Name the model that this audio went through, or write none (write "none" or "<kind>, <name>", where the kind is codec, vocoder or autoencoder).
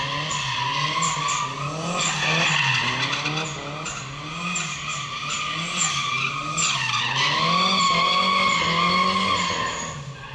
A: none